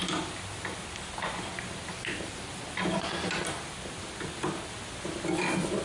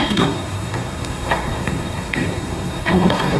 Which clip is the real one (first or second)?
first